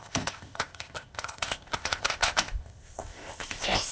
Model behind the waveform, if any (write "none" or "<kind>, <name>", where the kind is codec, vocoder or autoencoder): codec, ZipCodec